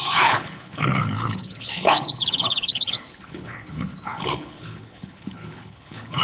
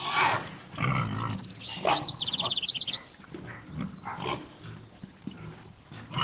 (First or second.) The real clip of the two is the second